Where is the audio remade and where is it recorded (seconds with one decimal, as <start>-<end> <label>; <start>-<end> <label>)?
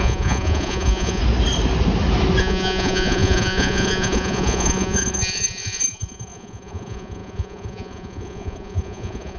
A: 0.0-1.2 remade; 1.2-2.4 recorded; 2.4-9.4 remade